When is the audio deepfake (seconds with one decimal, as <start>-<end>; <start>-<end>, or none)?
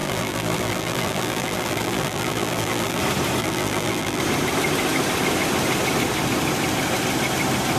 0.0-3.0; 3.4-4.2